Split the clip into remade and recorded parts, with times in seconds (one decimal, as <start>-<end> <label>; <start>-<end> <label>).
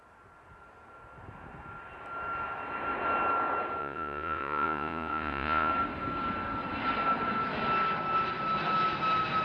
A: 0.0-3.8 recorded; 3.8-5.7 remade; 5.7-9.4 recorded